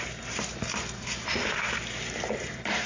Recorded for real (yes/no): no